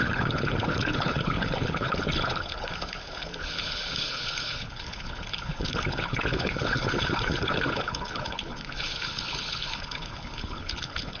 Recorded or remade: remade